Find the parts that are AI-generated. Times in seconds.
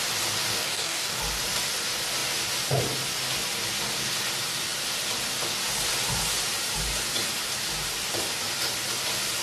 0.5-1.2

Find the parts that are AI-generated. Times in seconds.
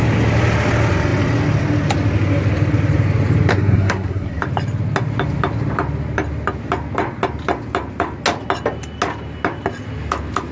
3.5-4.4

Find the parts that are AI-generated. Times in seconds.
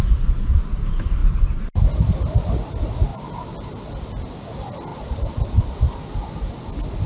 3.1-3.8; 4.9-5.8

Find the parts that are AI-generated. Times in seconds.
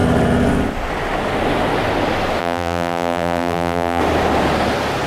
2.4-4.0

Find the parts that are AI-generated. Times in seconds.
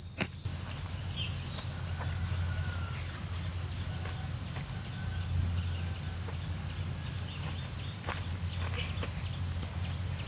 none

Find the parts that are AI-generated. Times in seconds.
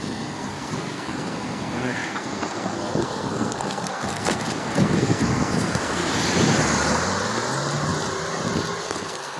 0.0-6.0; 8.8-9.4